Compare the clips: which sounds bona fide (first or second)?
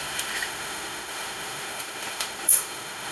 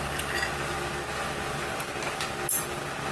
second